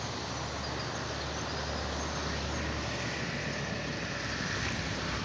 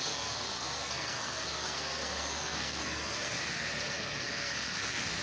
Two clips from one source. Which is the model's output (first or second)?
second